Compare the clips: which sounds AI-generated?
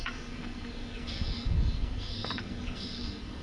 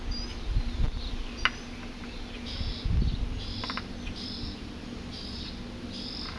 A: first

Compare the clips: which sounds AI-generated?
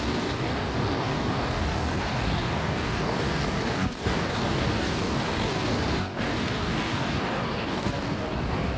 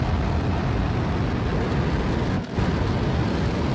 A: first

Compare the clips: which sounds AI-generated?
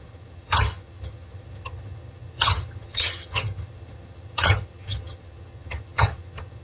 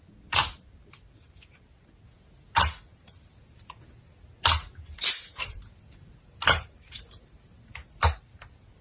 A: first